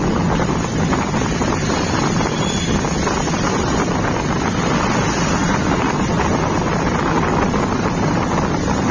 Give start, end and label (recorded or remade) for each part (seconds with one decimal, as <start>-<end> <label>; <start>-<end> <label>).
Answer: 0.0-8.9 recorded